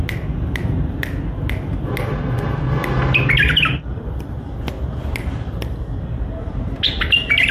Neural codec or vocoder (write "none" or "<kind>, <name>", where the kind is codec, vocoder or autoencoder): none